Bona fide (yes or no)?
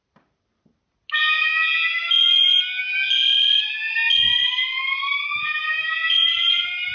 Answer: yes